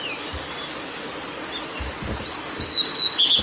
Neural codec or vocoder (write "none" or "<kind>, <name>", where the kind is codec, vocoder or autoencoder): none